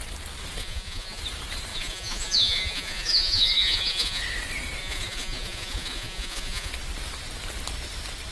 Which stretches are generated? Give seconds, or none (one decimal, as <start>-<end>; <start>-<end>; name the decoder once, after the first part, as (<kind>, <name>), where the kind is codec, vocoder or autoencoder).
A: 0.6-1.2 (vocoder, Vocos); 1.7-4.2; 4.8-6.7

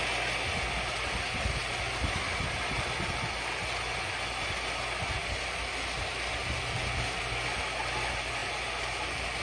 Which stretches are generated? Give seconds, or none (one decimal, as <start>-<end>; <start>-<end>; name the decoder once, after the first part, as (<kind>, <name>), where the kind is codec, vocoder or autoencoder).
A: none

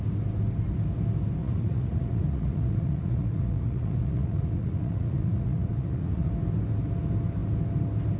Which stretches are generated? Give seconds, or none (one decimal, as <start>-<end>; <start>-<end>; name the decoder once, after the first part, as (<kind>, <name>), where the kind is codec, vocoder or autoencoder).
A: 1.4-6.3 (vocoder, Vocos)

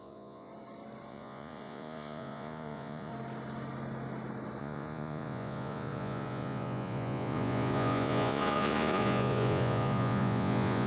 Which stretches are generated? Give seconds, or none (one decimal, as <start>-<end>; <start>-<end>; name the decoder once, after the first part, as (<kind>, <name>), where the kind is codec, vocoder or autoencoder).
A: 0.0-0.5 (vocoder, Vocos); 1.1-3.1; 4.6-10.9

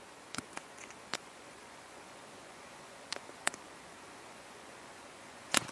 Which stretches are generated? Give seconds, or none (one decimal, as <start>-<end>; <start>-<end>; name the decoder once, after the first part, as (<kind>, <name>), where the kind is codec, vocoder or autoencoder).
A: 0.0-5.7 (vocoder, Vocos)